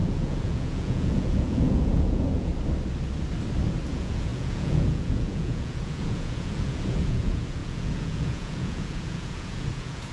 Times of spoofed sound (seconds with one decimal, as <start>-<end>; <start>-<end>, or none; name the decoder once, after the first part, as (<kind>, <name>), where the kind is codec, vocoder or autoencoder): 0.0-2.5 (vocoder, Vocos); 3.9-10.1